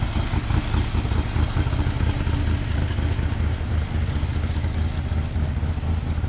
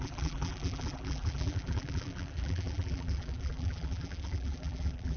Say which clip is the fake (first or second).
second